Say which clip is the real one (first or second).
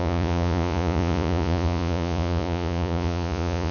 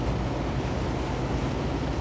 second